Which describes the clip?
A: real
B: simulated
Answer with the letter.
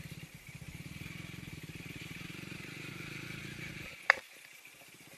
A